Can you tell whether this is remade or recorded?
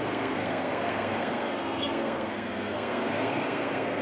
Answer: remade